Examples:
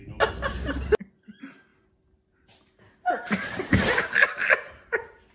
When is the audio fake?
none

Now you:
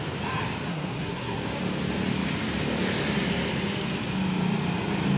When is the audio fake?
0.7-1.4 (codec, SNAC)

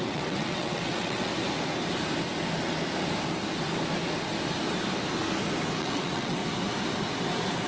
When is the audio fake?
0.0-1.3 (vocoder, WaveNeXt); 5.8-6.4

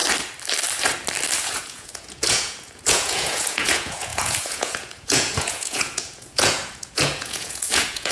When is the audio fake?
1.4-8.1 (vocoder, Vocos)

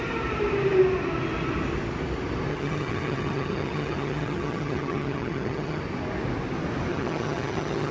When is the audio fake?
2.5-5.8 (vocoder, HiFi-GAN); 6.9-7.9

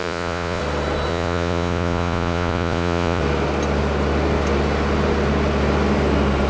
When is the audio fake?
0.0-0.6 (vocoder, Vocos); 1.1-3.2